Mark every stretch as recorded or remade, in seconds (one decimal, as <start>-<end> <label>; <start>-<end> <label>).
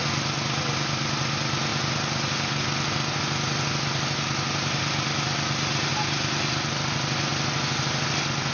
0.0-8.5 recorded